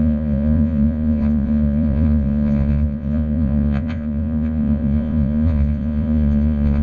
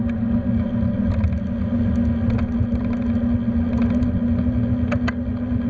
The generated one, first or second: first